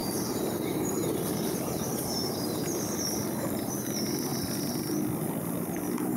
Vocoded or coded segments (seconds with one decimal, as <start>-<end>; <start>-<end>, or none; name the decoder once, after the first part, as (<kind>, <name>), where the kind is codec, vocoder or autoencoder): 0.0-3.7 (vocoder, BigVGAN v2)